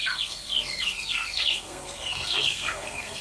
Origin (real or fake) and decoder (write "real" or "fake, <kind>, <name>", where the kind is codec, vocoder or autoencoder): fake, codec, SNAC